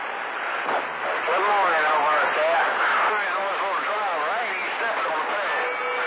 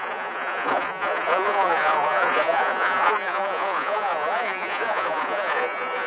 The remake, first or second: second